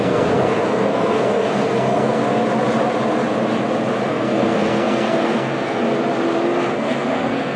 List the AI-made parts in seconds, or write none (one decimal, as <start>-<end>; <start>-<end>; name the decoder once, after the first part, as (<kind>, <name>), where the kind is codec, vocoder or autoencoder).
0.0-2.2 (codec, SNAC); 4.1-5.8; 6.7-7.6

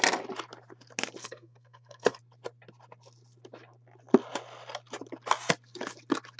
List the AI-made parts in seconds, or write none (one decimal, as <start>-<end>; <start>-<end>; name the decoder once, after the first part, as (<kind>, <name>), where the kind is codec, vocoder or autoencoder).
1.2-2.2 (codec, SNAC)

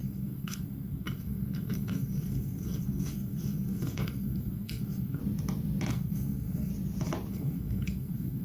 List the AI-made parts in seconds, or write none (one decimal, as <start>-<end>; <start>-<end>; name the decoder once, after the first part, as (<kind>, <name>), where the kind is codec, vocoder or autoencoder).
0.0-5.2 (codec, SNAC); 5.9-6.7; 7.3-8.4

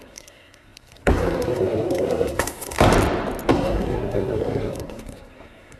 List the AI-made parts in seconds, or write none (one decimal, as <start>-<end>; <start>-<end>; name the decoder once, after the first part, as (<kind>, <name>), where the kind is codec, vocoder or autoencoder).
0.0-2.9 (codec, SNAC); 3.5-5.8

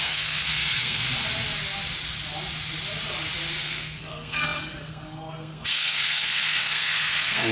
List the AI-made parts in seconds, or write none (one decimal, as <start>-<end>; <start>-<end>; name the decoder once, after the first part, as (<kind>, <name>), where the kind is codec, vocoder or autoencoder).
0.0-1.0 (codec, SNAC); 3.6-7.5

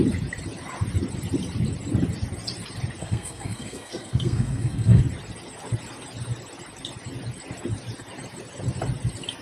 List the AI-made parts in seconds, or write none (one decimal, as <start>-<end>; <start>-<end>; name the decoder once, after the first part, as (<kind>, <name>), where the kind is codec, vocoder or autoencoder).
3.0-5.0 (codec, SNAC)